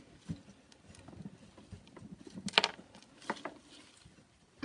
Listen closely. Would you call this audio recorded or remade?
recorded